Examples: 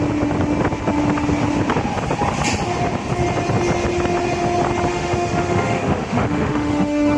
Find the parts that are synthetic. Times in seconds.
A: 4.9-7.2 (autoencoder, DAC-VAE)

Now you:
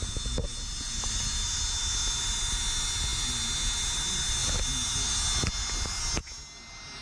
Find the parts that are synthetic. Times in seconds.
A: none